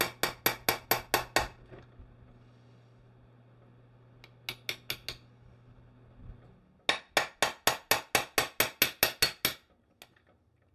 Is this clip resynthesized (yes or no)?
no